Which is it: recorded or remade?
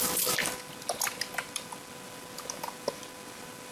recorded